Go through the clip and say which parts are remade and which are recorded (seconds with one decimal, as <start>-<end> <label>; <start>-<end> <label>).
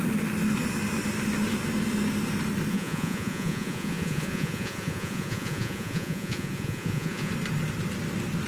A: 0.0-2.7 recorded; 2.7-7.3 remade; 7.3-8.5 recorded